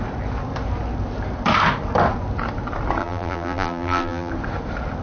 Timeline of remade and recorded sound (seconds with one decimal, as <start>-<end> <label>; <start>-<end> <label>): 0.0-3.0 recorded; 3.0-4.3 remade; 4.3-5.0 recorded